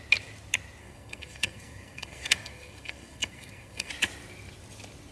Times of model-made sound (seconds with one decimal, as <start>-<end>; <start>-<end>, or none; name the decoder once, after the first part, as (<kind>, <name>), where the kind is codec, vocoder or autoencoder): 0.8-3.9 (codec, SNAC)